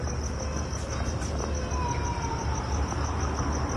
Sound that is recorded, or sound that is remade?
recorded